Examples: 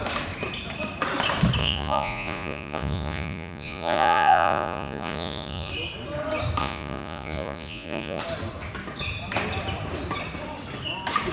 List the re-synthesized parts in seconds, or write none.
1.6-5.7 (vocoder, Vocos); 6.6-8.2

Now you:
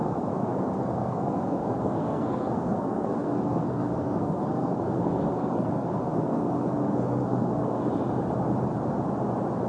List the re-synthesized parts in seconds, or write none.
0.0-7.8 (codec, SNAC)

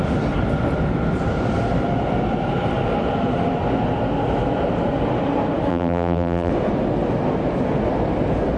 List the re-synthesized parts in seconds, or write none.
5.7-6.5 (vocoder, BigVGAN v2)

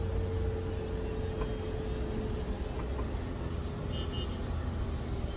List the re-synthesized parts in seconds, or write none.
4.4-5.4 (vocoder, BigVGAN v2)

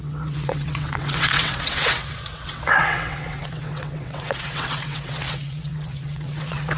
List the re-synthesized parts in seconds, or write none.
0.0-6.8 (vocoder, WaveNeXt)

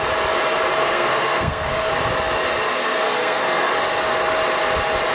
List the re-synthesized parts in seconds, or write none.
0.8-1.9 (codec, SNAC); 2.7-3.7

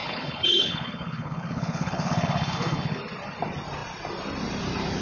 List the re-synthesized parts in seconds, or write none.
0.0-3.0 (codec, HILCodec)